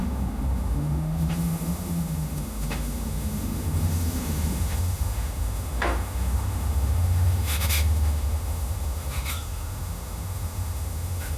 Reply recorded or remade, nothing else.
remade